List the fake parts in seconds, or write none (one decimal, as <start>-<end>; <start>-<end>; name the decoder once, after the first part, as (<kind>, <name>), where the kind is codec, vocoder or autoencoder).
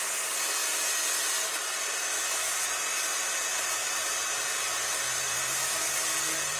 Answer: 2.0-2.7 (autoencoder, DAC-VAE)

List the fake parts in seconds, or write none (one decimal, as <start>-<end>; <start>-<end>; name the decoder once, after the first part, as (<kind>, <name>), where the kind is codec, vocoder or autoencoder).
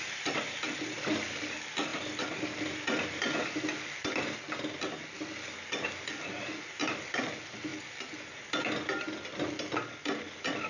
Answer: none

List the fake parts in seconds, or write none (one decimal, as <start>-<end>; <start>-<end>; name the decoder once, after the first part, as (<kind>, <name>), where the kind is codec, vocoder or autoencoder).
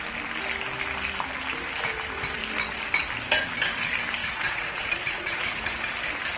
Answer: 4.2-5.8 (vocoder, Vocos)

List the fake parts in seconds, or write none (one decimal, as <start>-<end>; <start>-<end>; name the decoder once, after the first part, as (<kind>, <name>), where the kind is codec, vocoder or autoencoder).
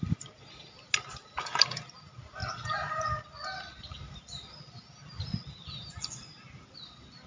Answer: none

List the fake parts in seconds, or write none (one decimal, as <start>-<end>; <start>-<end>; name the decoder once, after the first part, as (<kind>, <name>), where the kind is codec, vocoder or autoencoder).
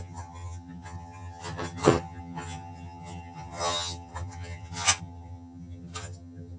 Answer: 0.0-6.6 (vocoder, HiFi-GAN)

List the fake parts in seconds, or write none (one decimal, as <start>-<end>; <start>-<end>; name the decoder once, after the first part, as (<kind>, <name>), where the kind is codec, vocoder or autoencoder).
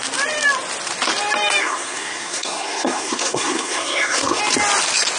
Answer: 1.6-4.4 (codec, SNAC)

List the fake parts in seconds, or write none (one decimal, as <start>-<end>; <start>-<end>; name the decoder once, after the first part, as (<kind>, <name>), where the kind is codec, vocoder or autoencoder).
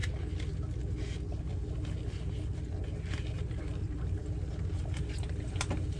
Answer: 3.6-6.0 (vocoder, BigVGAN v2)